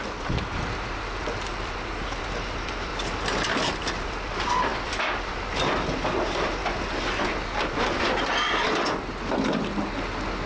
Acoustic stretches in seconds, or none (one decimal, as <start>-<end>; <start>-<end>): 2.9-3.5; 6.6-10.5